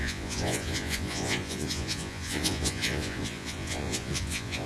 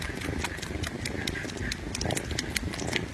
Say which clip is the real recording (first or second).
second